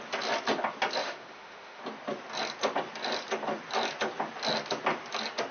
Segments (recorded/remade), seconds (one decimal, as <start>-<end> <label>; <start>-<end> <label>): 0.0-1.0 recorded; 1.0-1.8 remade; 1.8-5.5 recorded